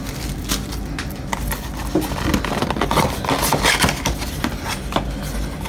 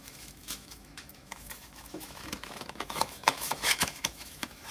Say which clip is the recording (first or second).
first